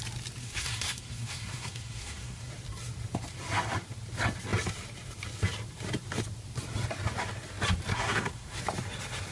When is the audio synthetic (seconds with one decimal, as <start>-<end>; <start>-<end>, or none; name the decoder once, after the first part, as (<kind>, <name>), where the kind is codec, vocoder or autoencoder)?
0.4-2.5 (codec, SNAC); 7.9-8.6